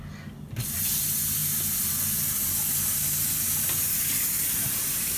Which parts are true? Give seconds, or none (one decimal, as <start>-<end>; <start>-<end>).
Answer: 0.0-5.2